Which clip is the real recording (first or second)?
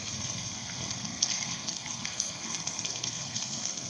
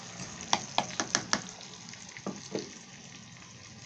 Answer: second